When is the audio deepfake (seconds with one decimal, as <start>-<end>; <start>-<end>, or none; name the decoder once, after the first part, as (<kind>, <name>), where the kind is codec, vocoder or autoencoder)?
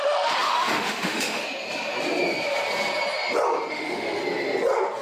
0.0-1.4 (autoencoder, DAC-VAE); 3.7-4.2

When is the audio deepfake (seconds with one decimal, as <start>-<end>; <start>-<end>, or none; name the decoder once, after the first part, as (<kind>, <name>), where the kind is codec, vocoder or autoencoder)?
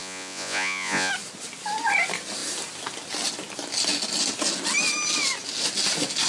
0.0-1.1 (vocoder, Vocos)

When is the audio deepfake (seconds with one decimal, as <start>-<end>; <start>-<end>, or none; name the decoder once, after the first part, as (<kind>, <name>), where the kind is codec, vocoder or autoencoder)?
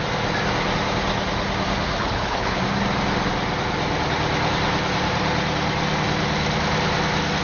2.0-2.6 (codec, HILCodec)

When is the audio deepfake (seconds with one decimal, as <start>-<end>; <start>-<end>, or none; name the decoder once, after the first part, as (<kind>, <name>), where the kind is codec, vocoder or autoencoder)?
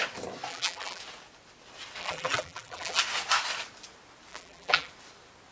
0.5-1.0 (vocoder, BigVGAN v2); 2.0-3.0; 4.3-4.9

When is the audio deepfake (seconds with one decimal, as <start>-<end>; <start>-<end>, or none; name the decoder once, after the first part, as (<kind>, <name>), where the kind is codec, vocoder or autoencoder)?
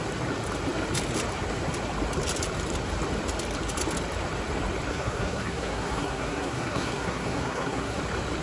4.9-8.0 (codec, SNAC)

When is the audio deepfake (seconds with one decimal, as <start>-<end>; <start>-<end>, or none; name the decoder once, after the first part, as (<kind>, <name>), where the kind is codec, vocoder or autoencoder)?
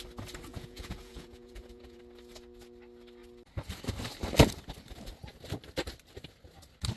0.5-2.0 (vocoder, Vocos)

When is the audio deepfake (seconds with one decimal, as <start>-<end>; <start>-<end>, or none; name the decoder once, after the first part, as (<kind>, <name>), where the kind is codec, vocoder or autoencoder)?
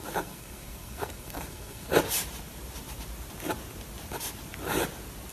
0.0-1.9 (codec, SNAC)